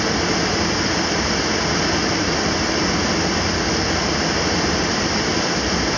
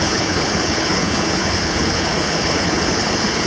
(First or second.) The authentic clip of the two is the first